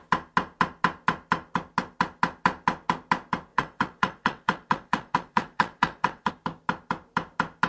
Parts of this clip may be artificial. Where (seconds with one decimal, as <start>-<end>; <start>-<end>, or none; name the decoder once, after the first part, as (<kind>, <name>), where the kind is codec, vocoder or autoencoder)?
3.5-6.3 (vocoder, WaveNeXt)